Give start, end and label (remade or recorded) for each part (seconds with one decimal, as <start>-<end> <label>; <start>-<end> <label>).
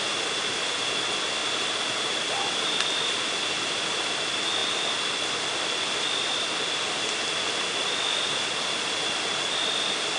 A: 0.0-10.2 recorded